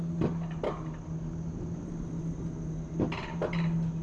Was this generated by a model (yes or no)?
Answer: no